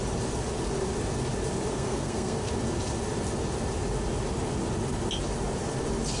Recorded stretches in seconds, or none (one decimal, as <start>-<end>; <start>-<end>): 0.0-1.7; 2.5-6.2